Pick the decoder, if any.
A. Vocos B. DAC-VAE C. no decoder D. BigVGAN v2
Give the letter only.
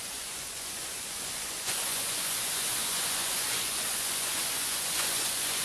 A